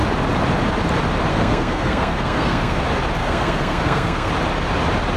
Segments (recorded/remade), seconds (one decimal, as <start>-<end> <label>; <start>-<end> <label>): 0.0-1.3 recorded; 1.3-2.8 remade; 2.8-3.2 recorded; 3.2-4.3 remade; 4.3-5.2 recorded